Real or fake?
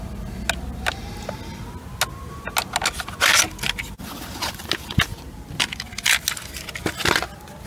real